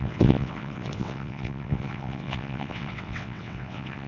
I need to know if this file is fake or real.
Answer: fake